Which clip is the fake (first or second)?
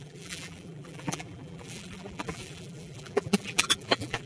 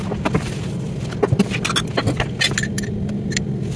first